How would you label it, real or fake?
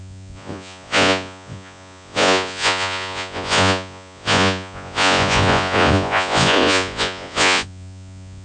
fake